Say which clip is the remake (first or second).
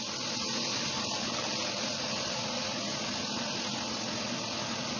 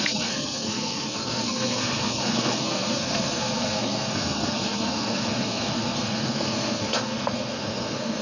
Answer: second